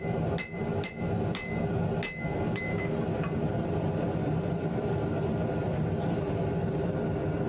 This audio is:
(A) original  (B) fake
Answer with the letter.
A